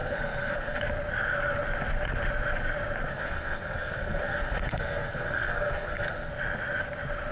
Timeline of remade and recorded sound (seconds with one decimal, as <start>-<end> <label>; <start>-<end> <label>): 0.0-0.8 remade; 0.8-3.1 recorded; 3.1-6.3 remade; 6.3-7.3 recorded